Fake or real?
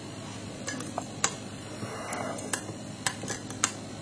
real